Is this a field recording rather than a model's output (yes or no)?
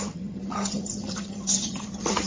no